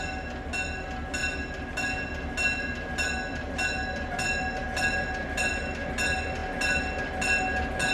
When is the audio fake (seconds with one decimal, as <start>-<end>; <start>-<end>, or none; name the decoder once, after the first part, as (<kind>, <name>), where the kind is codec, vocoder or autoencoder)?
none